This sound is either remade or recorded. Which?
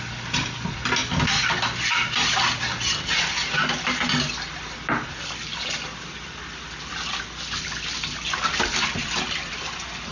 recorded